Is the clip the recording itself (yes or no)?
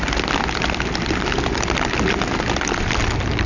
yes